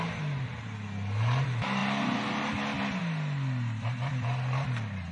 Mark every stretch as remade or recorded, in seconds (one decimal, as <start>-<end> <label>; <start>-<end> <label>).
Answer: 0.0-5.1 recorded

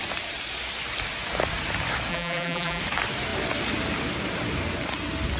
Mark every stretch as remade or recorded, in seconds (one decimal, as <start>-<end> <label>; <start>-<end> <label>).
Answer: 0.0-2.1 recorded; 2.1-2.8 remade; 2.8-5.4 recorded

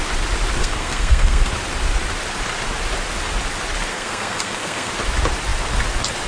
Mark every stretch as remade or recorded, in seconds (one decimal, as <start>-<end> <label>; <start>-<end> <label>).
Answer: 0.0-0.6 recorded; 0.6-1.5 remade; 1.5-3.9 recorded; 3.9-4.9 remade; 4.9-6.3 recorded